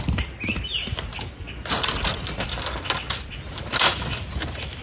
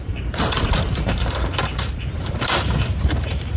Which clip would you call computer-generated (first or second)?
second